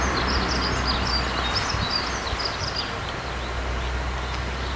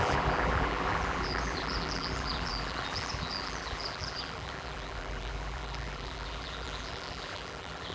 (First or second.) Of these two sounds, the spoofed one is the second